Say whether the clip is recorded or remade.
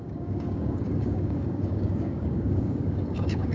remade